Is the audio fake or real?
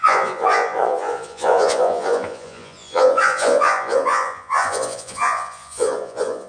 fake